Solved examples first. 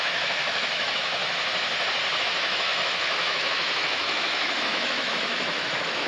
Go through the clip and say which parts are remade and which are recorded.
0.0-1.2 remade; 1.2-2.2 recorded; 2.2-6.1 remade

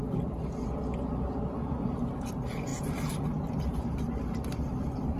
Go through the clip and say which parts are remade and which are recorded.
0.0-1.5 recorded; 1.5-5.2 remade

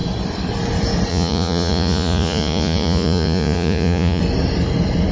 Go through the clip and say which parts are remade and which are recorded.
0.0-1.1 recorded; 1.1-4.2 remade; 4.2-5.1 recorded